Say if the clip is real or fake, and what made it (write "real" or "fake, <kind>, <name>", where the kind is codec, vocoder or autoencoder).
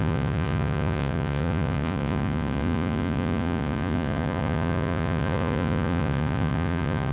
fake, vocoder, Vocos